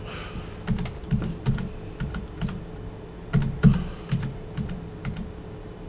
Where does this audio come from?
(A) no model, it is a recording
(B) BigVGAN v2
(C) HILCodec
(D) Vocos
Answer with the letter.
A